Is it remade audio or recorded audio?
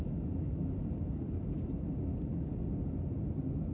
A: recorded